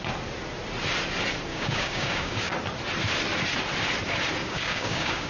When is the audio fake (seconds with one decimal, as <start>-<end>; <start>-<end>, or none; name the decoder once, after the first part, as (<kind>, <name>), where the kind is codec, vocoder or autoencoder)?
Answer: 1.5-2.5 (codec, DAC); 4.4-5.3